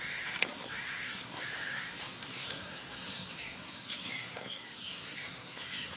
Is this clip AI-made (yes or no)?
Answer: yes